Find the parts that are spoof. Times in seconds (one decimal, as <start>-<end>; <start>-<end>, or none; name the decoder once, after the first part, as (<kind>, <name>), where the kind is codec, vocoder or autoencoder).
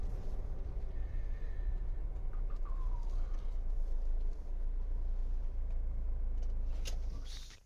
2.0-2.5 (vocoder, Vocos)